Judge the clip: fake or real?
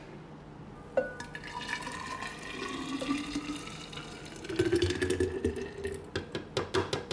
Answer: real